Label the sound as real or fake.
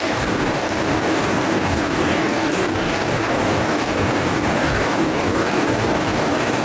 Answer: fake